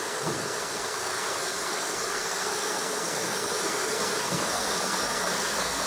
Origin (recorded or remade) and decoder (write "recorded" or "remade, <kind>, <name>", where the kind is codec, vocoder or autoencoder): remade, codec, SNAC